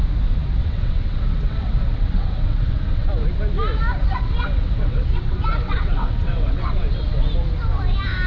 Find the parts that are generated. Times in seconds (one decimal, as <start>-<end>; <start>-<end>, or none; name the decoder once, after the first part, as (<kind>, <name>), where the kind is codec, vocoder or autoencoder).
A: 0.6-3.1 (vocoder, WaveNeXt); 4.0-7.3